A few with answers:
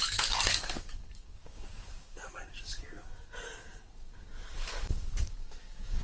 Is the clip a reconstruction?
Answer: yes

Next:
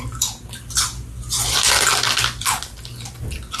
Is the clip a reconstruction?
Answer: no